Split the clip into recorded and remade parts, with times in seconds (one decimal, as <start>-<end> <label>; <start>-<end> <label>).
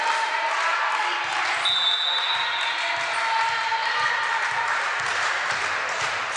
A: 0.0-0.7 remade; 0.7-3.4 recorded; 3.4-3.8 remade; 3.8-4.7 recorded; 4.7-6.4 remade